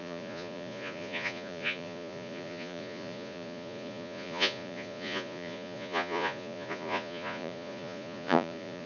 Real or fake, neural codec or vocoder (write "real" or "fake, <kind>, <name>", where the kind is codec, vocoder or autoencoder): fake, vocoder, Vocos